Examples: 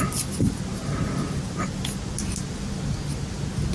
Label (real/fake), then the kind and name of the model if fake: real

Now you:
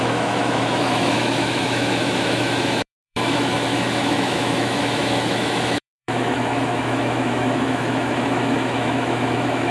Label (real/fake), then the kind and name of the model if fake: fake, autoencoder, DAC-VAE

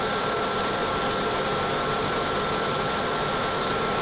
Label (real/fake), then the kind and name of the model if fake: fake, vocoder, BigVGAN v2